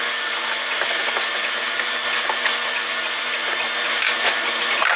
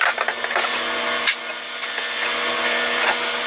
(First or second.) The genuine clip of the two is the second